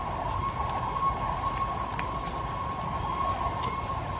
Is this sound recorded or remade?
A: recorded